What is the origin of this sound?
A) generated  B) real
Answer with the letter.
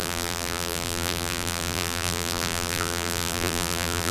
A